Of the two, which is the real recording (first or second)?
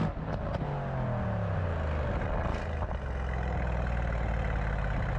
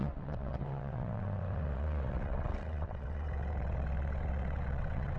first